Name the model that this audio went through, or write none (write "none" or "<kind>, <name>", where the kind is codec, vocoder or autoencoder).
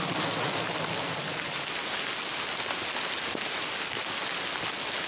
none